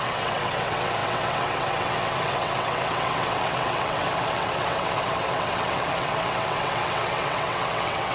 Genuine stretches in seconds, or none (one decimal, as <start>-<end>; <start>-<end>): none